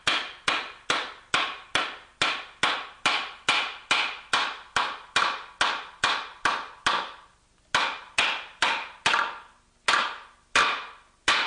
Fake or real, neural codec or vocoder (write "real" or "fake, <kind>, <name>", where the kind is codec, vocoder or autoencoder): real